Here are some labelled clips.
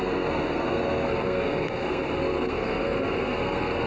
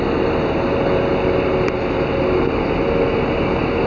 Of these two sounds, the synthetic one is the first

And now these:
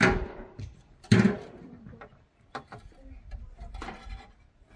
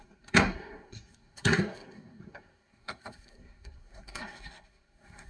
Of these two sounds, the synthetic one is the second